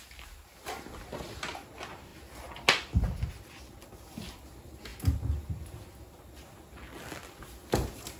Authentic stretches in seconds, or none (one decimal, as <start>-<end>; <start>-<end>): 0.0-8.2